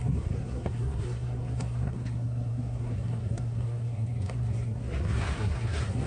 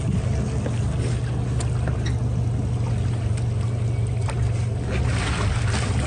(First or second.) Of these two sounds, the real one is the second